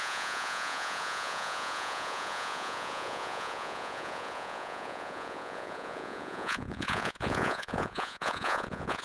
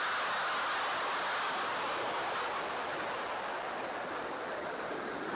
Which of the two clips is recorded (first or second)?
second